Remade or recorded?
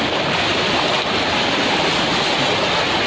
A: recorded